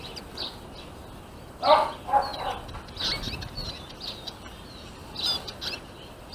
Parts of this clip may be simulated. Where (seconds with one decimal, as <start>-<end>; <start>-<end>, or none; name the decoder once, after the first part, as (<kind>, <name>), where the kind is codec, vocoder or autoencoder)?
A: none